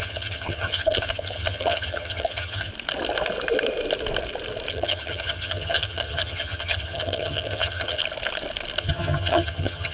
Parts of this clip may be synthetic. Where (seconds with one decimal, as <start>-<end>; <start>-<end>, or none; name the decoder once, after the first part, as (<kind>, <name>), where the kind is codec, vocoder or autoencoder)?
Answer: 0.0-2.7 (vocoder, HiFi-GAN); 4.7-8.0; 8.8-9.9